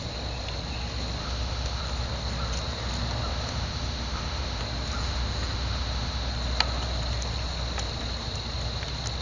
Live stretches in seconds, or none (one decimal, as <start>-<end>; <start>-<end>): 0.0-1.2; 1.8-3.3; 4.6-5.0; 6.3-9.2